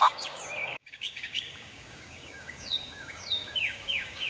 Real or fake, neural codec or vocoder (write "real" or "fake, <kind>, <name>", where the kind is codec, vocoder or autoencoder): fake, codec, DAC